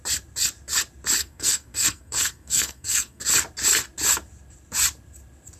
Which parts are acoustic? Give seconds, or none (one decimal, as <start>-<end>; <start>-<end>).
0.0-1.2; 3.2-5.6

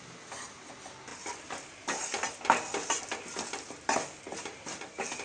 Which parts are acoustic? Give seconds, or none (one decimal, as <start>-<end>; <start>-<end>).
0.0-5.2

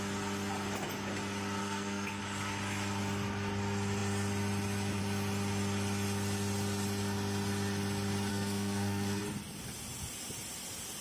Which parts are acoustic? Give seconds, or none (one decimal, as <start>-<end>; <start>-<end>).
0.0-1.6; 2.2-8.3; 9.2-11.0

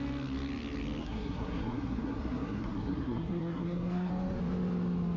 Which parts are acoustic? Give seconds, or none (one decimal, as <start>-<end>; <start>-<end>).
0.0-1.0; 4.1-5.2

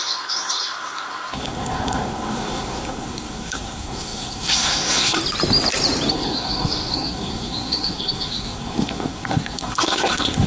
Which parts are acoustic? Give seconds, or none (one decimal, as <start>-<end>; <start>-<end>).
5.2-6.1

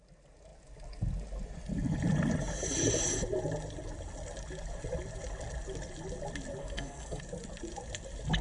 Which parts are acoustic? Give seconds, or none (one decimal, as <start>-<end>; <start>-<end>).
0.0-6.6; 7.2-8.4

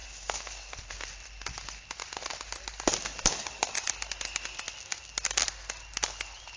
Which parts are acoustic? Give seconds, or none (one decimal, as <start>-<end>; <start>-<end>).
0.0-6.6

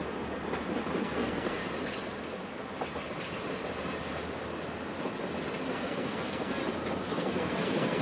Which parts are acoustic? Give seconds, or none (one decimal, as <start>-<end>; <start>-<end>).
0.0-1.0; 1.6-5.7; 6.6-7.1